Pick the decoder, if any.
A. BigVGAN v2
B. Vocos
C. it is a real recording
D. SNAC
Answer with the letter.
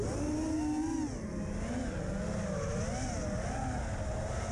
C